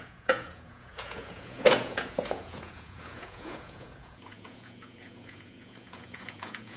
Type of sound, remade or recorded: remade